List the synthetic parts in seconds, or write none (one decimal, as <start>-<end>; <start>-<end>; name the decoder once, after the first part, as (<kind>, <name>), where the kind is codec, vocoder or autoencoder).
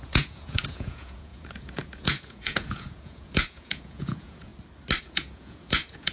0.0-4.5 (vocoder, Vocos); 5.0-6.1